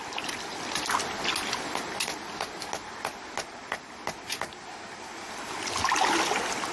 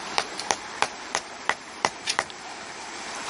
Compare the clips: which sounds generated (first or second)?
second